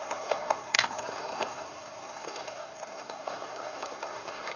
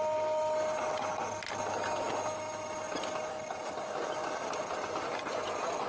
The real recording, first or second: second